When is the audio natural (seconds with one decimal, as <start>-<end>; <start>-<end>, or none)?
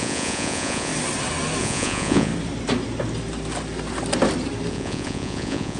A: 0.9-1.6; 2.3-4.7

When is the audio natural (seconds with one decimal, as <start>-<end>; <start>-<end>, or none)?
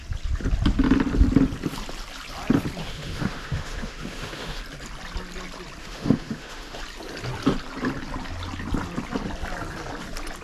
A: 0.0-2.8; 4.6-5.8; 6.8-10.4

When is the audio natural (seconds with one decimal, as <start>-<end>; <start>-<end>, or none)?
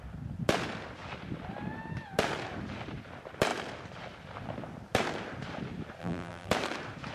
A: 0.0-6.0; 6.5-7.1